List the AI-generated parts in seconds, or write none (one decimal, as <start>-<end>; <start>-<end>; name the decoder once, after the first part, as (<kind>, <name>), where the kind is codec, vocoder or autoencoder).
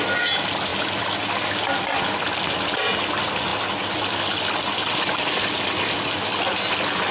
none